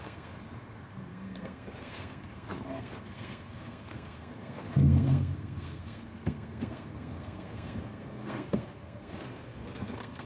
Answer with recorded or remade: remade